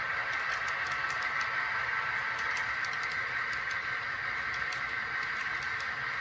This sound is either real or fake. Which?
real